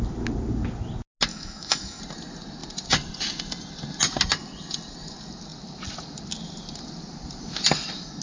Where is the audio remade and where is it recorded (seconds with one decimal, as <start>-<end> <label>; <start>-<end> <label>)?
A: 0.0-1.3 recorded; 1.3-2.0 remade; 2.0-8.2 recorded